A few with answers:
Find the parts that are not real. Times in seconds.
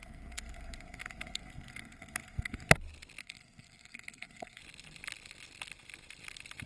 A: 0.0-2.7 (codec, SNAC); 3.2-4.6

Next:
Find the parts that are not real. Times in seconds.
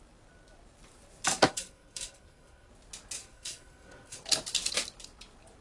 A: 1.5-2.7 (codec, SNAC); 3.2-4.2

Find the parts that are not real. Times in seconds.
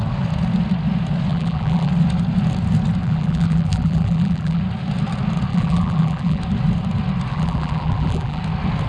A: 1.3-1.9 (vocoder, BigVGAN v2); 3.0-4.6; 5.5-6.4; 7.3-8.4